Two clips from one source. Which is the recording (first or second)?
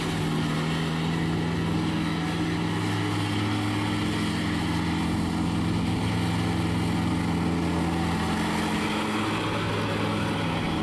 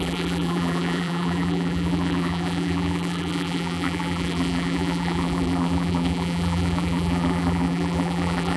first